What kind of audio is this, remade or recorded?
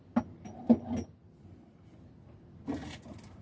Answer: recorded